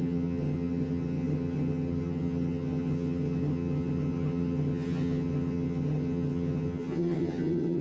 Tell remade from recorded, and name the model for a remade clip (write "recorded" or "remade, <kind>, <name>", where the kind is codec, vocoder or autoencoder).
remade, vocoder, HiFi-GAN